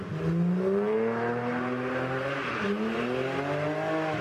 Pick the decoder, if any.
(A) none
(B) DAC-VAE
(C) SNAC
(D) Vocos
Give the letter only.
A